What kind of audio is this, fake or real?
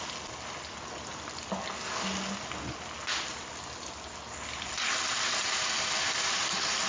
real